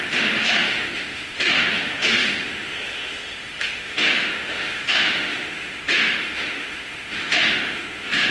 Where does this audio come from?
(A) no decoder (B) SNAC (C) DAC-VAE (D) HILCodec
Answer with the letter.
C